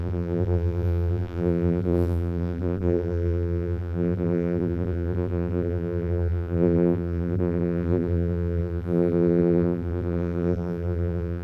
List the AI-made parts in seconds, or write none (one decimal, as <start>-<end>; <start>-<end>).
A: 0.0-11.4